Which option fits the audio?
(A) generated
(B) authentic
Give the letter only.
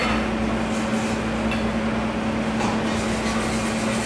B